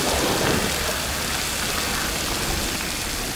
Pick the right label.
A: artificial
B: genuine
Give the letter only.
B